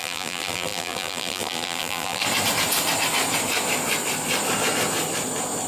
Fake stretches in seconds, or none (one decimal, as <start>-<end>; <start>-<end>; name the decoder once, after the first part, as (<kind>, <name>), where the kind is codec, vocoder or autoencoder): 0.0-2.2 (vocoder, BigVGAN v2)